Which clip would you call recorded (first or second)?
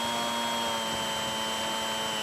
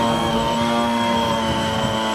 first